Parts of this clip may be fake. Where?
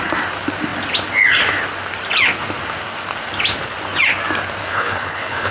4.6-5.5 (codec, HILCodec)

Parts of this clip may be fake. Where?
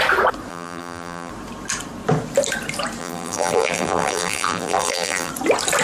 0.5-1.3 (vocoder, BigVGAN v2); 3.0-5.3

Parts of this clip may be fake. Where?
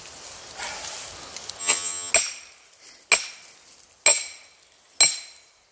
1.6-2.1 (vocoder, HiFi-GAN)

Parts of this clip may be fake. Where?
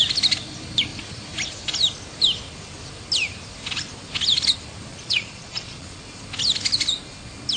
4.9-6.0 (vocoder, Vocos)